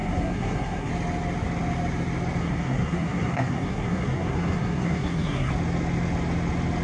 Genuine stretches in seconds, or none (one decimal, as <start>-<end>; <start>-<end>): 0.9-2.4; 5.5-6.8